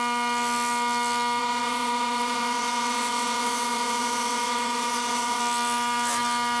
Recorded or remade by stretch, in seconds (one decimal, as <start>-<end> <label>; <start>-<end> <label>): 0.0-1.4 recorded; 1.4-5.4 remade; 5.4-6.6 recorded